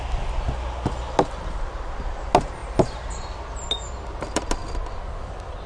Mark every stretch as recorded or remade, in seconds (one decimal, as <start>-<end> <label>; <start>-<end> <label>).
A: 0.0-5.7 recorded